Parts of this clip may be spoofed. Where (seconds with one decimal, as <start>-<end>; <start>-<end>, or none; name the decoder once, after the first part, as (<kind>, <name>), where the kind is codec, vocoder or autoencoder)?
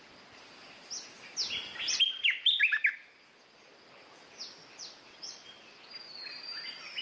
none